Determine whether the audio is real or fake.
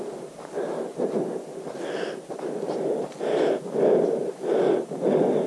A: real